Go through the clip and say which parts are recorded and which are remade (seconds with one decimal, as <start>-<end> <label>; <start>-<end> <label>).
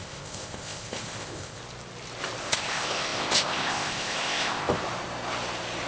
0.0-1.6 remade; 1.6-2.4 recorded; 2.4-4.8 remade; 4.8-5.9 recorded